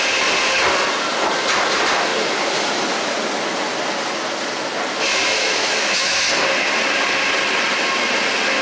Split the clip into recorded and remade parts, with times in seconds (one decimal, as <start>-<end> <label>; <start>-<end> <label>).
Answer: 0.0-5.3 recorded; 5.3-6.3 remade; 6.3-8.6 recorded